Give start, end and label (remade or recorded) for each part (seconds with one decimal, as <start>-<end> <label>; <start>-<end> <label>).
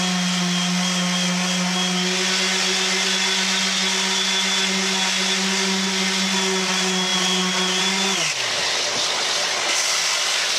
0.0-10.6 recorded